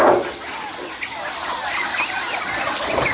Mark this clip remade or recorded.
recorded